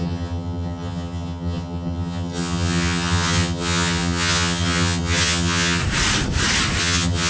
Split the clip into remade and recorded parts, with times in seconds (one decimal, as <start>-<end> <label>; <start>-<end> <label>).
0.0-5.8 remade; 5.8-6.8 recorded; 6.8-7.3 remade